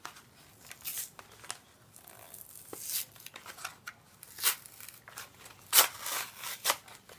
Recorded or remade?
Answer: recorded